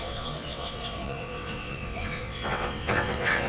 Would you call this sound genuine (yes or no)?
no